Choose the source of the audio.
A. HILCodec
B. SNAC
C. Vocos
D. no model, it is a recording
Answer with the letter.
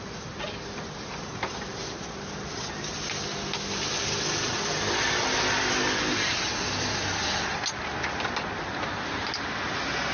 D